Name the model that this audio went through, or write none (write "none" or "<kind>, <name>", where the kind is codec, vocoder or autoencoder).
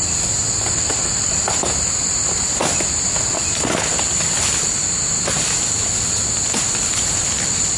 none